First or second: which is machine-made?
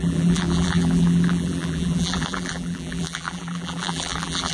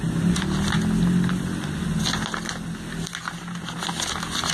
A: first